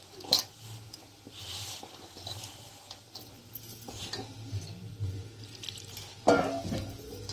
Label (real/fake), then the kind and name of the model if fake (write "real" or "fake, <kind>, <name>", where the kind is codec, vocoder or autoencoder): real